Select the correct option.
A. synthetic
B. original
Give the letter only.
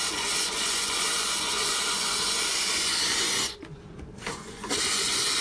A